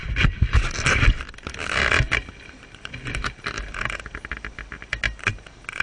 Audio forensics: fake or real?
real